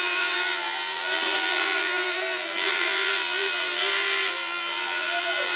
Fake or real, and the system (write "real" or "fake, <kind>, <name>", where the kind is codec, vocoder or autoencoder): fake, vocoder, BigVGAN v2